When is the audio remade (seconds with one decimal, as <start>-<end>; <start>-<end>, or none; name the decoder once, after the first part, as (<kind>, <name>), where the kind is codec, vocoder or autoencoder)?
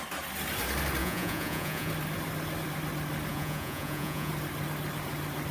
1.0-1.9 (vocoder, Vocos); 3.3-4.3